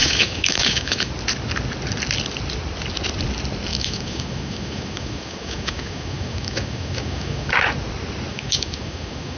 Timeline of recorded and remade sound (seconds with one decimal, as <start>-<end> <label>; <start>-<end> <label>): 0.0-1.1 remade; 1.1-3.7 recorded; 3.7-7.5 remade; 7.5-8.3 recorded; 8.3-9.4 remade